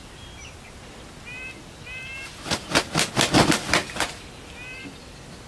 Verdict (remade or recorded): recorded